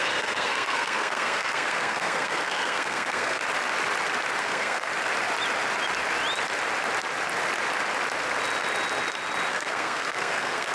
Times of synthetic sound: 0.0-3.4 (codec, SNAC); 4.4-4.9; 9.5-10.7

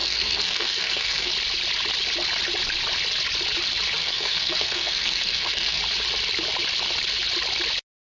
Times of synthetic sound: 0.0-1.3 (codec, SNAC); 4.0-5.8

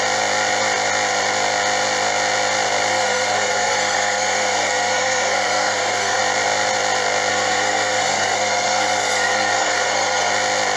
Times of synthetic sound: 2.9-6.2 (codec, SNAC); 7.3-10.3

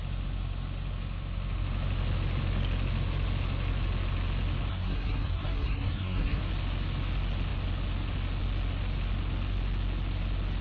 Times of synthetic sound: 4.7-6.4 (codec, SNAC)

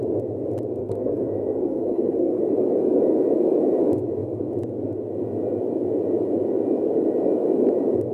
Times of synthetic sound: 0.8-2.4 (codec, SNAC)

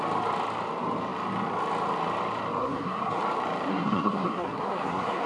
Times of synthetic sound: 2.6-3.2 (codec, SNAC); 3.7-5.3